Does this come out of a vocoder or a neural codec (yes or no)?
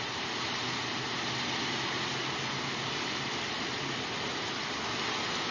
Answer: no